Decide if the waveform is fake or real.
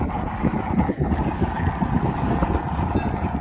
real